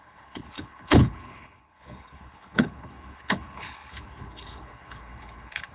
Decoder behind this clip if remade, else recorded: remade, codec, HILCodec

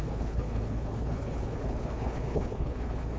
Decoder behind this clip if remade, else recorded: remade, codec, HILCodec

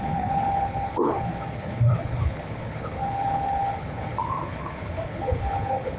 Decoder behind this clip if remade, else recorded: remade, codec, HILCodec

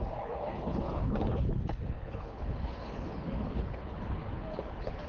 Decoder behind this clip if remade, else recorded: remade, codec, HILCodec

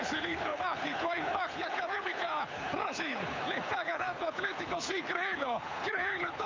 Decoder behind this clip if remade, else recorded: remade, codec, HILCodec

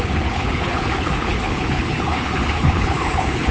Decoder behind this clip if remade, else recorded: remade, codec, HILCodec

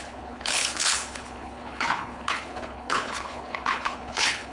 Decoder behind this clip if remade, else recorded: remade, codec, HILCodec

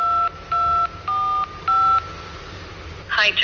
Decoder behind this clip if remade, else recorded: recorded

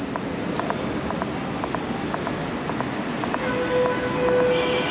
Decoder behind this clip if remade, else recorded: recorded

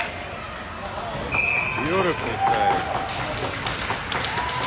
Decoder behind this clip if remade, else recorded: recorded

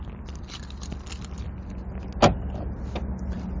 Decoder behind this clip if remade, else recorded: recorded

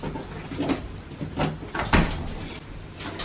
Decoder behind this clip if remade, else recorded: recorded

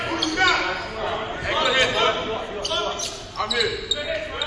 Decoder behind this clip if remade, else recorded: recorded